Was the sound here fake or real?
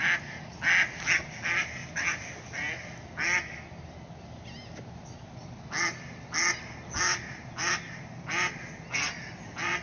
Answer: real